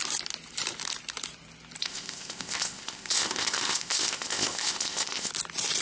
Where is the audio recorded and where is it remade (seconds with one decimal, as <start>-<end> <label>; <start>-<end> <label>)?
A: 0.0-1.8 recorded; 1.8-5.3 remade; 5.3-5.8 recorded